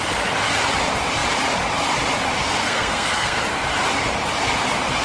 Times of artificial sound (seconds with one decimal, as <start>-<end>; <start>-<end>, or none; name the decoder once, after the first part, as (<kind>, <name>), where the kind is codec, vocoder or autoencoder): 2.4-3.4 (codec, SNAC)